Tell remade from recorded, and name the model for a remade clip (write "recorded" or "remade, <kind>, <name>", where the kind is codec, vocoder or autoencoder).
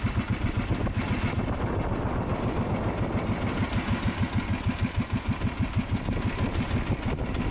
recorded